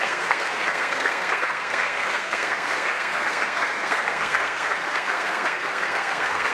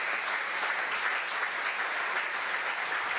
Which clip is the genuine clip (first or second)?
second